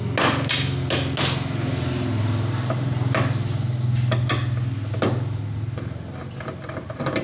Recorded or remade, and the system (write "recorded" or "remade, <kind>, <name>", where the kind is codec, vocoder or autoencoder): recorded